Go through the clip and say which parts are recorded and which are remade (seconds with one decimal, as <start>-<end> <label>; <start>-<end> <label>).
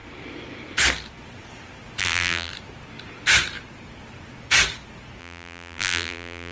0.0-2.0 recorded; 2.0-2.5 remade; 2.5-5.2 recorded; 5.2-6.5 remade